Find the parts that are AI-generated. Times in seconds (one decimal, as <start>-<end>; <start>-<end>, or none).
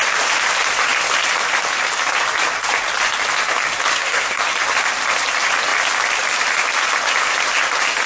3.9-4.4